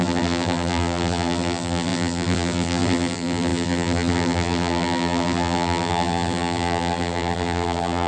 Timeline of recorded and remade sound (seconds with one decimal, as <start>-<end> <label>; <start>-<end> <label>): 0.0-8.1 remade